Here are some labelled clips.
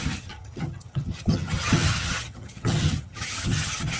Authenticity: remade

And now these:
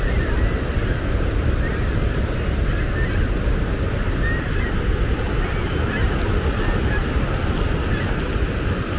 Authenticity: recorded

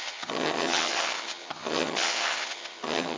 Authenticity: remade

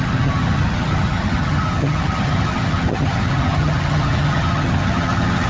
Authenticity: remade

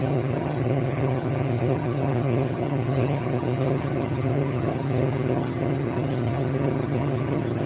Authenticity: remade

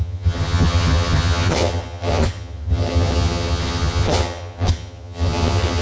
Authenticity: remade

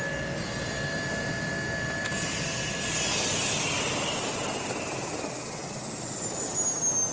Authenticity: recorded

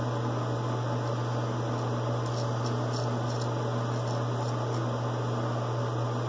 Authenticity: recorded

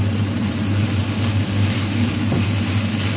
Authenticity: recorded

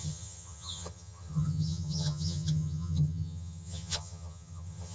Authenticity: remade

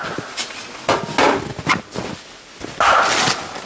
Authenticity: recorded